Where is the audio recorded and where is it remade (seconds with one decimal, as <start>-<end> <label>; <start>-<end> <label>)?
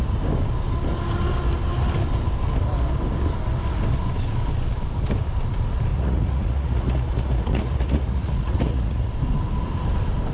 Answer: 0.0-5.9 recorded; 5.9-9.1 remade; 9.1-10.3 recorded